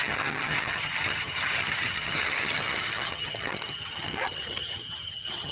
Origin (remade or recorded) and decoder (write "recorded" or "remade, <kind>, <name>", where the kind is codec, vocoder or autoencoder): remade, vocoder, HiFi-GAN